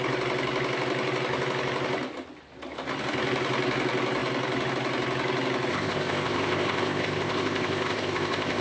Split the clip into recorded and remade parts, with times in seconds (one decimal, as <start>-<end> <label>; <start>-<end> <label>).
0.0-5.7 recorded; 5.7-8.6 remade